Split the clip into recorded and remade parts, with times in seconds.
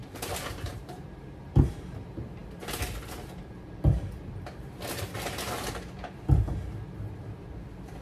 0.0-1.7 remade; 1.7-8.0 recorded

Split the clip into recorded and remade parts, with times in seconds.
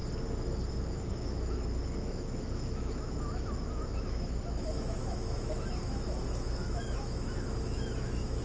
0.0-0.7 recorded; 0.7-8.4 remade